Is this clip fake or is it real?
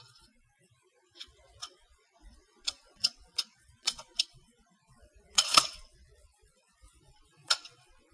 fake